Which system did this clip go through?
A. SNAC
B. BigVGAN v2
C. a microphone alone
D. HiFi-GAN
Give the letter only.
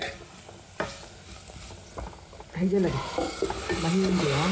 C